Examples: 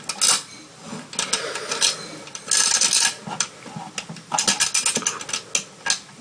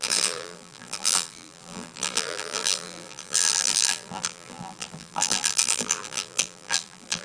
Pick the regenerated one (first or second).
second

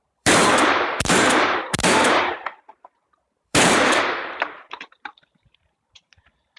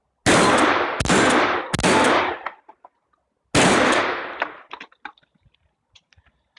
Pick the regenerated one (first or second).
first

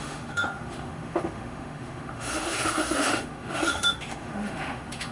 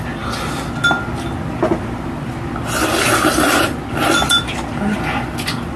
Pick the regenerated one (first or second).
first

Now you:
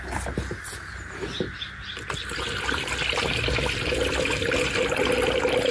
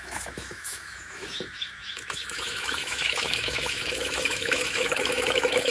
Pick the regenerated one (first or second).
second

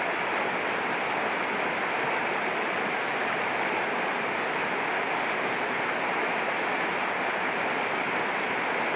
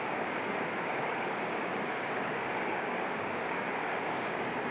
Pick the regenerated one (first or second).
second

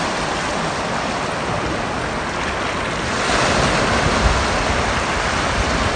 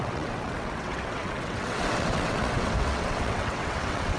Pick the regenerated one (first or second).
second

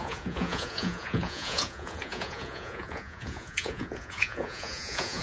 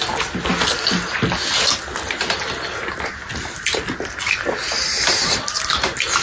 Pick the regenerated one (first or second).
first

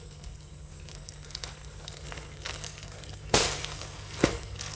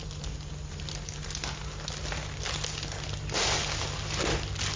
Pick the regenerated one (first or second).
first